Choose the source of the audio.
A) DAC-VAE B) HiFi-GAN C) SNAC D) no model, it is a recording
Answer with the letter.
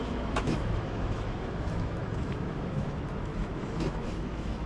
A